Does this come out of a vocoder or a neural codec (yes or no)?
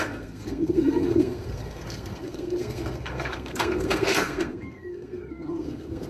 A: yes